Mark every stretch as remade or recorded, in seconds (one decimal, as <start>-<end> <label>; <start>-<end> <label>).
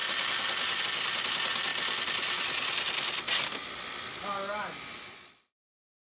0.0-6.0 recorded